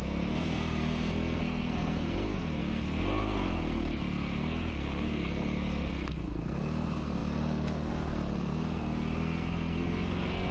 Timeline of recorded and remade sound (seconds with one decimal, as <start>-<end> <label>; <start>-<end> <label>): 0.0-10.5 remade